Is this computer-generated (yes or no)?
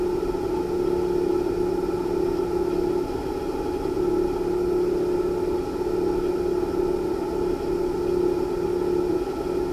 no